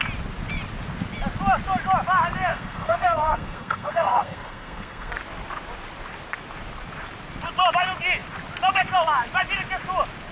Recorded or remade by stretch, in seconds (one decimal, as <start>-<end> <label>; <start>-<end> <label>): 0.0-2.5 recorded; 2.5-5.1 remade; 5.1-10.3 recorded